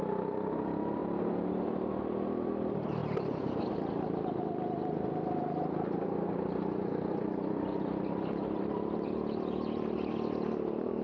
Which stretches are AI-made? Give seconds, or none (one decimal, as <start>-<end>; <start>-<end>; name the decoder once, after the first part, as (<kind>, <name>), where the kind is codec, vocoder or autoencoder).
none